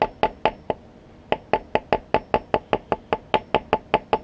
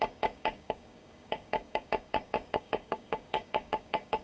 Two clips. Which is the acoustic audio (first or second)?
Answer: first